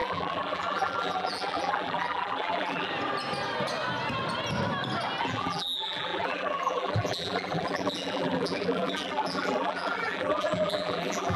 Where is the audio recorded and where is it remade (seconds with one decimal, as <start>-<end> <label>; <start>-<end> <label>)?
0.0-2.9 remade; 2.9-5.2 recorded; 5.2-11.4 remade